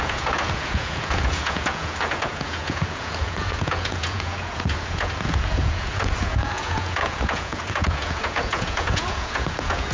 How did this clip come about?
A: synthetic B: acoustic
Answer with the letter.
A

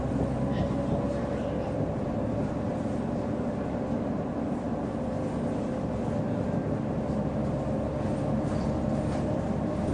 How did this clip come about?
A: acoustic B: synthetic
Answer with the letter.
A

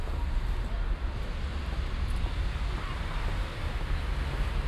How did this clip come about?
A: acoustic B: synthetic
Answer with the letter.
A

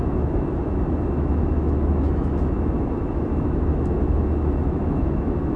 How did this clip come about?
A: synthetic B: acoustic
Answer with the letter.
A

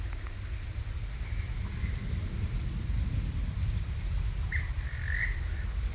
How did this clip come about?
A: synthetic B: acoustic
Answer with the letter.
B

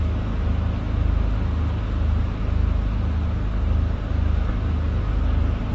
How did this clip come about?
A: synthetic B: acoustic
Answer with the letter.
B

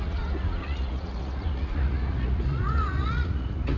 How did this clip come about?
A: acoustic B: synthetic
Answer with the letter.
B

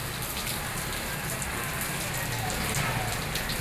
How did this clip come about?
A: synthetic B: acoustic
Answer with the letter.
B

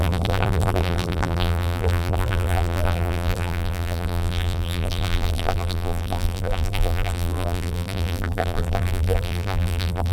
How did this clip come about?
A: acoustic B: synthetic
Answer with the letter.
B